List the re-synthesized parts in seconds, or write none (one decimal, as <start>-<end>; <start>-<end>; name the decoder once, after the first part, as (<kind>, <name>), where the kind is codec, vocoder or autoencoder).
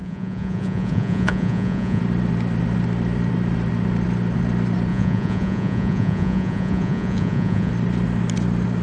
0.0-2.0 (vocoder, Vocos); 4.9-7.7